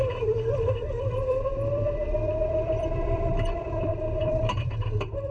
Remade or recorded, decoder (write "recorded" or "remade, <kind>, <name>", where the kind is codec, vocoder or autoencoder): remade, vocoder, BigVGAN v2